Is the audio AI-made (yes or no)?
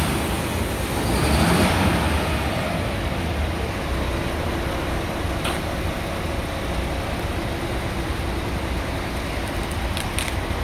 no